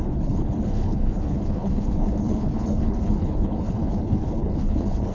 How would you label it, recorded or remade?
remade